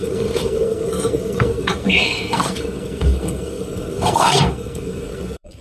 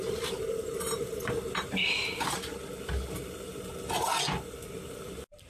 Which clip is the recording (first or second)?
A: second